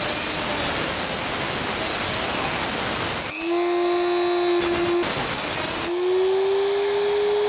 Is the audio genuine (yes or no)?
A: yes